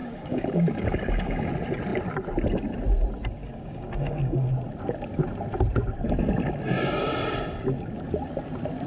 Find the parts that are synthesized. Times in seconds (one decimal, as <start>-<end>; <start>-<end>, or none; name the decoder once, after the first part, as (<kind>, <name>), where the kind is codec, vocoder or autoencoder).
0.0-1.5 (codec, DAC); 3.4-4.5